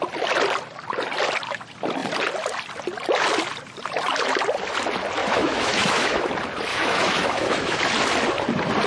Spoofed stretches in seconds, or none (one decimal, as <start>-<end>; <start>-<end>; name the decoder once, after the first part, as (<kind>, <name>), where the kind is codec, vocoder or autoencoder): 5.2-6.3 (autoencoder, DAC-VAE); 6.7-7.8